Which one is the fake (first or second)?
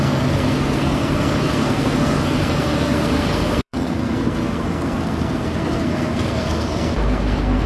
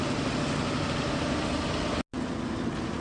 first